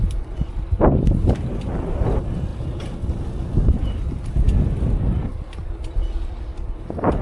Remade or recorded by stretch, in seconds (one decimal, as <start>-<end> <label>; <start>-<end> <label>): 0.0-7.2 recorded